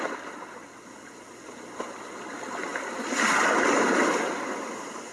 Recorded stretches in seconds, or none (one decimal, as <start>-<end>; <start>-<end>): 0.0-5.1